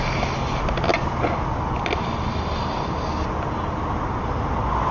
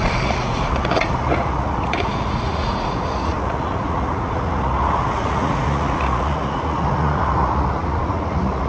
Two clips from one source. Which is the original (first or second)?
first